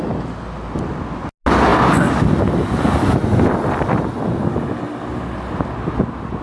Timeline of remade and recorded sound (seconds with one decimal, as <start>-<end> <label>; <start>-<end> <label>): 0.0-6.4 recorded